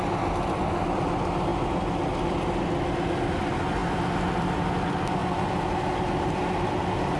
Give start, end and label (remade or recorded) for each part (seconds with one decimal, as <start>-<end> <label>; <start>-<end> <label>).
0.0-3.8 recorded; 3.8-4.7 remade; 4.7-7.2 recorded